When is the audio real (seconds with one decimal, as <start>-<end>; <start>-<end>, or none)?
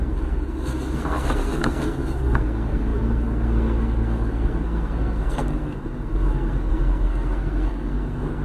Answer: none